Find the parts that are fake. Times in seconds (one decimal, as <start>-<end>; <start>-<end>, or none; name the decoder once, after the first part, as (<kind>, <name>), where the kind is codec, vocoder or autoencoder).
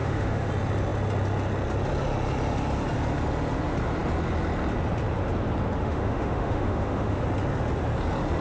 0.0-0.5 (autoencoder, DAC-VAE); 5.8-7.2